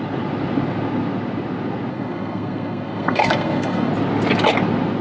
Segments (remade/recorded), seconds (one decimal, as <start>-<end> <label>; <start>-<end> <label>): 0.0-1.9 recorded; 1.9-3.9 remade; 3.9-5.0 recorded